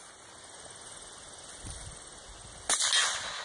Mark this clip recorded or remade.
recorded